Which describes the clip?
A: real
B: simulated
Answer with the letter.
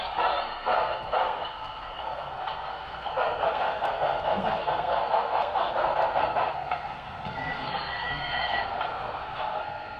B